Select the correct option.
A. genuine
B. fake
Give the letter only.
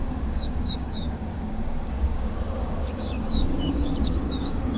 B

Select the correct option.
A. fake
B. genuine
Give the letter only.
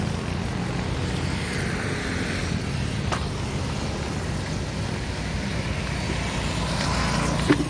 B